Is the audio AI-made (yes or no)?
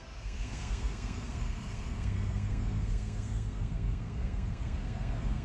yes